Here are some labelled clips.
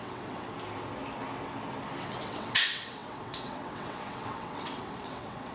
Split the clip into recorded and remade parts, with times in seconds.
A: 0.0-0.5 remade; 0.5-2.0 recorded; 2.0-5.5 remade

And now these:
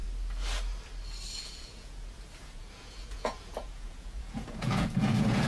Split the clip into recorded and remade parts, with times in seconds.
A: 0.0-1.3 recorded; 1.3-5.5 remade

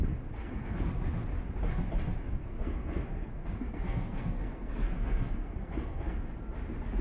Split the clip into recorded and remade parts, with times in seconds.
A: 0.0-0.4 recorded; 0.4-0.9 remade; 0.9-2.4 recorded; 2.4-6.2 remade; 6.2-7.0 recorded